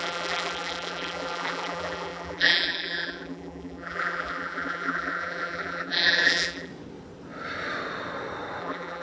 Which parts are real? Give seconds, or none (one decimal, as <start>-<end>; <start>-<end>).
6.7-8.6